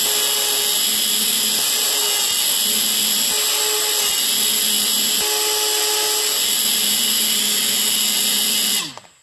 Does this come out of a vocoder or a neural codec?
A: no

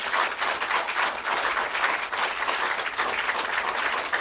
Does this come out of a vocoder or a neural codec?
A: no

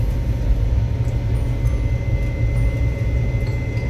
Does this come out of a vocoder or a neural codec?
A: no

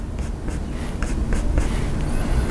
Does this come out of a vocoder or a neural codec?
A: no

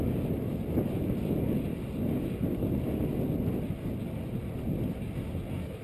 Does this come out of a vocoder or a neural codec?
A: no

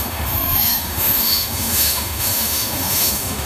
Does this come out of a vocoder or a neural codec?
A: yes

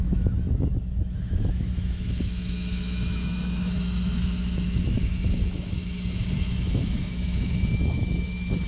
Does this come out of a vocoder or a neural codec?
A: yes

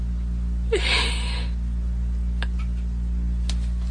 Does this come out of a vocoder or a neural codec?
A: no